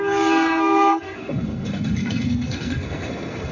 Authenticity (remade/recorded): remade